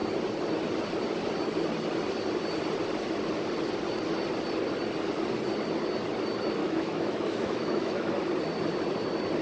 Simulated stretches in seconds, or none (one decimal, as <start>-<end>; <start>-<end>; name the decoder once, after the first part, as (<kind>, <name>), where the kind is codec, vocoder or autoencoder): 6.6-8.1 (autoencoder, DAC-VAE)